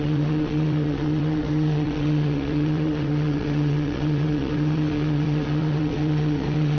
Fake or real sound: fake